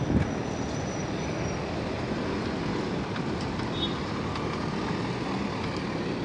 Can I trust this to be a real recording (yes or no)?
yes